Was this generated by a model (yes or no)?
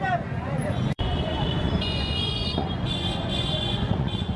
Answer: yes